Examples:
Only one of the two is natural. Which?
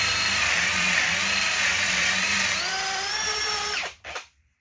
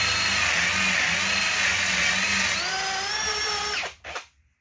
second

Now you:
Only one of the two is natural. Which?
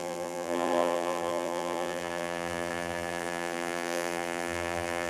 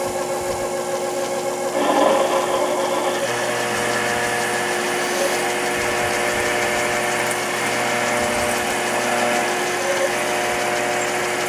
second